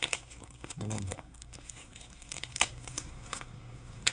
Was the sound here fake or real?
fake